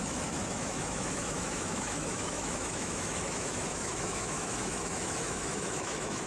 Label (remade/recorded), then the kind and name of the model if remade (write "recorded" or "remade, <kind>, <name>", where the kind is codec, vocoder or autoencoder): remade, autoencoder, DAC-VAE